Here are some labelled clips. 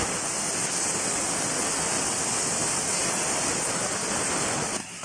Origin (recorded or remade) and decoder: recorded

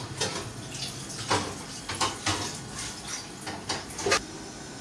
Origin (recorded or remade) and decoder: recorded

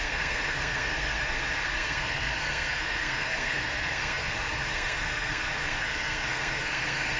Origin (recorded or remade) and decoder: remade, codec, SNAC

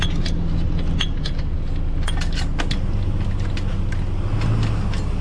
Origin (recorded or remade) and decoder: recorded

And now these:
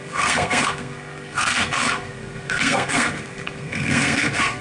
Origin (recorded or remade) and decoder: remade, codec, SNAC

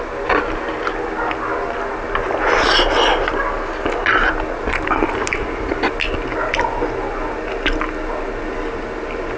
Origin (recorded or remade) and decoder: recorded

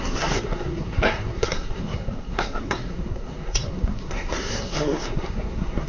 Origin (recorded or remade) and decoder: remade, codec, SNAC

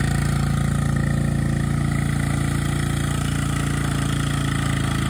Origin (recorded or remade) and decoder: recorded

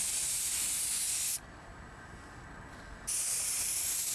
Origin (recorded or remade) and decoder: recorded